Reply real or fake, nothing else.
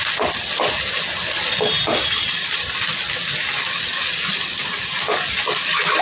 real